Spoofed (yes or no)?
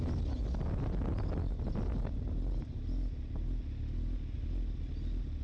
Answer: no